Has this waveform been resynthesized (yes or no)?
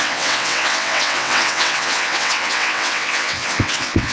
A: yes